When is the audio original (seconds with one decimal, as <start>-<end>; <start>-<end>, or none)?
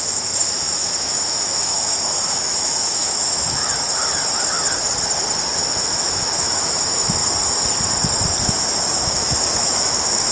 3.6-5.6; 7.2-8.4